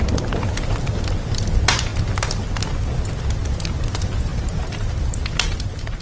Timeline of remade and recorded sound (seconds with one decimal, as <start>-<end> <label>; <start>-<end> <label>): 0.0-6.0 recorded